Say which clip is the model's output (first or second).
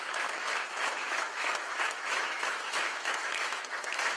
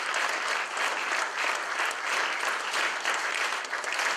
first